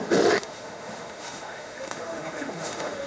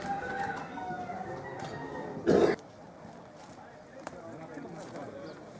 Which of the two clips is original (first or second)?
second